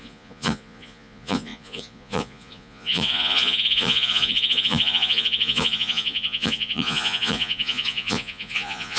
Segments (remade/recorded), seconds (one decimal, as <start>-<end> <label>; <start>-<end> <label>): 0.0-9.0 remade